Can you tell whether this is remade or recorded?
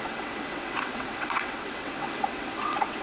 remade